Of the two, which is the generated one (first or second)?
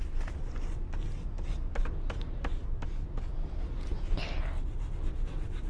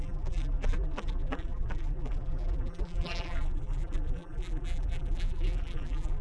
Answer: second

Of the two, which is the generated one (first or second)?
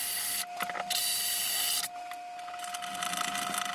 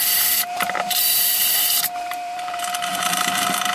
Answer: second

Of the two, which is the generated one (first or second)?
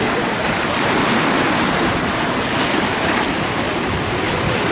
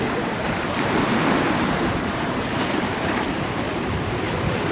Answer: second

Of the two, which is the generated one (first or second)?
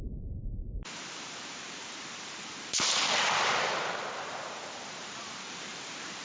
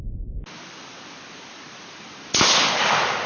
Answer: first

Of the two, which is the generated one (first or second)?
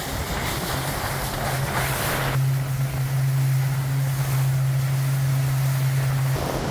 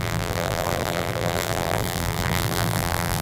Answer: second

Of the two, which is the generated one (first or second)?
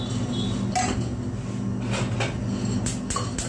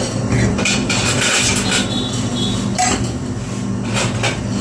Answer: second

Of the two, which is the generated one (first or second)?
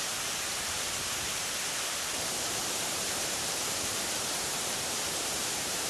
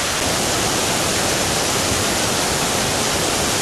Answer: first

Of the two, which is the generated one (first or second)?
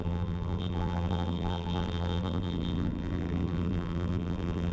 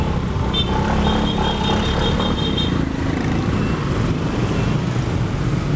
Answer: first